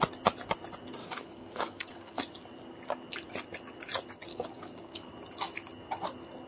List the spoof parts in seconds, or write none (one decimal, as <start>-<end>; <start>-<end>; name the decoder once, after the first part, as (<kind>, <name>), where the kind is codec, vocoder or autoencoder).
1.0-2.2 (codec, DAC); 4.3-5.1